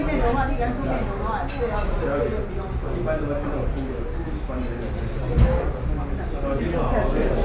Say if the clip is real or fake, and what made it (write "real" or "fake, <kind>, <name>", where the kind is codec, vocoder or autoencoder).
real